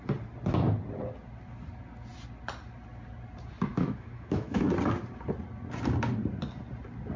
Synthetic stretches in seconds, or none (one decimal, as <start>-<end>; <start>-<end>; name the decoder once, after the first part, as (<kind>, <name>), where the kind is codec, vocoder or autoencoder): 3.7-4.7 (autoencoder, DAC-VAE)